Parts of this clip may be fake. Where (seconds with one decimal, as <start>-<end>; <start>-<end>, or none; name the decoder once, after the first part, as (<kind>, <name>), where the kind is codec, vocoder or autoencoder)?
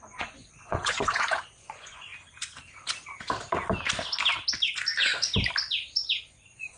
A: 0.0-2.1 (vocoder, Vocos); 6.2-6.8